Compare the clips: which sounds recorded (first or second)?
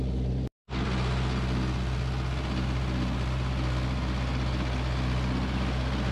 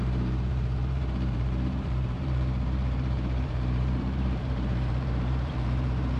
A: first